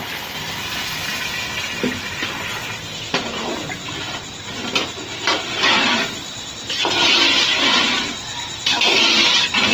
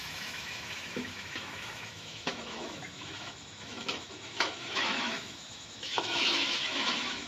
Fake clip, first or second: second